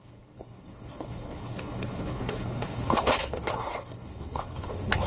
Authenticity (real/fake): fake